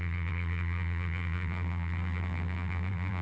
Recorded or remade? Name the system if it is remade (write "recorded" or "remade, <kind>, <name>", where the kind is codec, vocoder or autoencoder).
remade, vocoder, BigVGAN v2